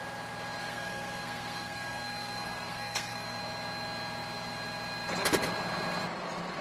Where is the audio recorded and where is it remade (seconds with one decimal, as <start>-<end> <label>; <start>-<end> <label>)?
0.0-0.6 recorded; 0.6-3.4 remade; 3.4-6.6 recorded

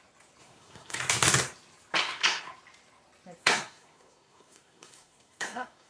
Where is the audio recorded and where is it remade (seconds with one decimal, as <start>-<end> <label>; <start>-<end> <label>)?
0.0-0.4 recorded; 0.4-1.0 remade; 1.0-2.0 recorded; 2.0-2.5 remade; 2.5-3.4 recorded; 3.4-5.9 remade

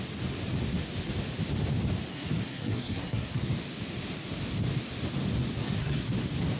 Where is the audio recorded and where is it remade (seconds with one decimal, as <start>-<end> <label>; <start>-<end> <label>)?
0.0-2.1 recorded; 2.1-3.5 remade; 3.5-5.6 recorded; 5.6-6.1 remade; 6.1-6.6 recorded

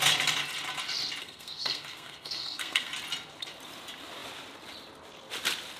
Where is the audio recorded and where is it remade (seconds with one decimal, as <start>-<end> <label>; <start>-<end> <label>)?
0.0-1.2 recorded; 1.2-2.9 remade; 2.9-5.8 recorded

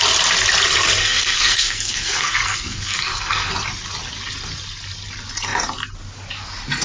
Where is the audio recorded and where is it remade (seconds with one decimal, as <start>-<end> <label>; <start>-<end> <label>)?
0.0-1.0 recorded; 1.0-3.5 remade; 3.5-6.8 recorded

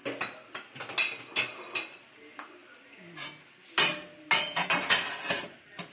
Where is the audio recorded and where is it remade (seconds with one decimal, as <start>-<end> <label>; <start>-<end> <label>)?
0.0-5.9 recorded

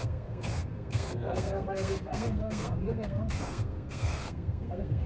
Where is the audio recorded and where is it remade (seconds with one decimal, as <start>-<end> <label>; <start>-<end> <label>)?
0.0-5.1 remade